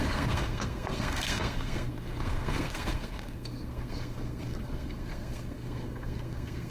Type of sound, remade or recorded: remade